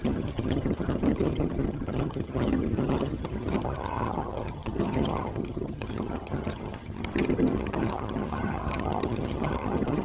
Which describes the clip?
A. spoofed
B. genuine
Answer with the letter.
A